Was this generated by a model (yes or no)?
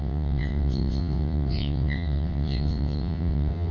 yes